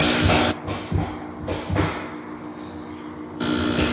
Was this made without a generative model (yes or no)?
yes